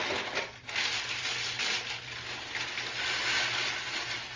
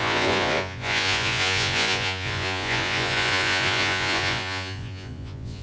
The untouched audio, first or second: first